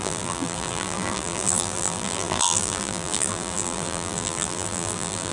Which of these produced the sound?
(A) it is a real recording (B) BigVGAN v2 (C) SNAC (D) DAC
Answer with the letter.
B